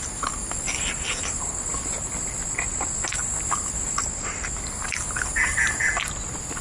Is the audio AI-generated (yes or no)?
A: no